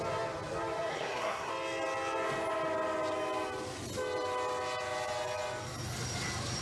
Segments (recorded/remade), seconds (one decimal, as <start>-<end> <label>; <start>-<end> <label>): 0.0-0.9 recorded; 0.9-1.5 remade; 1.5-6.6 recorded